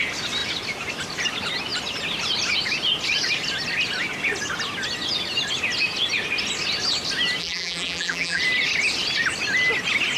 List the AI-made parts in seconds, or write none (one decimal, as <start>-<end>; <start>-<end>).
7.4-8.4